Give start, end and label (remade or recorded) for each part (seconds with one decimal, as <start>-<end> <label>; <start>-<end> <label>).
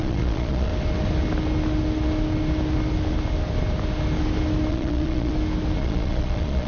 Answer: 0.0-0.7 remade; 0.7-4.7 recorded; 4.7-5.3 remade; 5.3-5.8 recorded; 5.8-6.7 remade